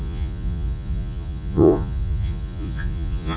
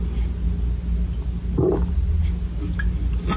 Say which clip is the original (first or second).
second